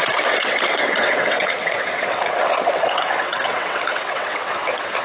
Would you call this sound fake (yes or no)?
yes